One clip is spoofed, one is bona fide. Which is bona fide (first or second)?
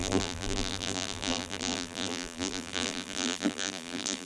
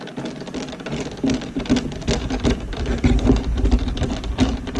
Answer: second